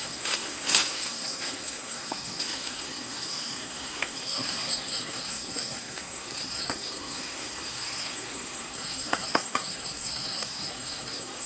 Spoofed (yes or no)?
yes